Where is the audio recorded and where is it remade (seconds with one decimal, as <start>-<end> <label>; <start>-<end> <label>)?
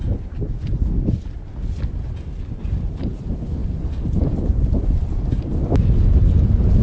0.0-6.8 recorded